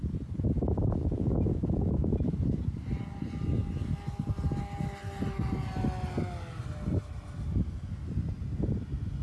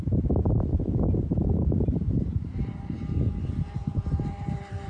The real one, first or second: first